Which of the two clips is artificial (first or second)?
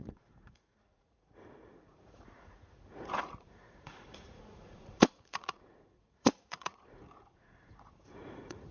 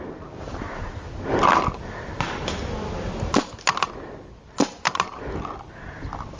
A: first